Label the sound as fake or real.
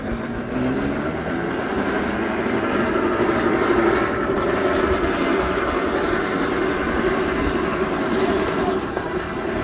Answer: real